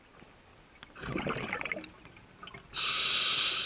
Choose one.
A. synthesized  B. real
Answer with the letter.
B